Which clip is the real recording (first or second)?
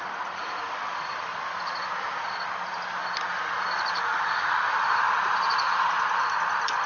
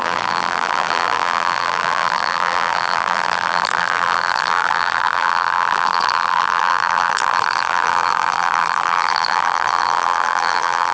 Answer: first